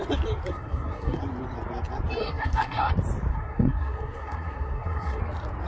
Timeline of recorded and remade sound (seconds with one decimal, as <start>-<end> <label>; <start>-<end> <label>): 0.0-0.5 recorded; 0.5-1.2 remade; 1.2-2.2 recorded; 2.2-2.9 remade; 2.9-3.3 recorded; 3.3-5.2 remade; 5.2-5.7 recorded